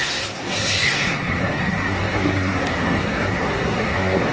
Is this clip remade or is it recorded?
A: remade